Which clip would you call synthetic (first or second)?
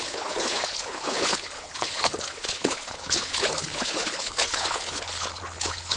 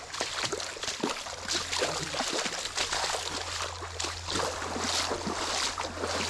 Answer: first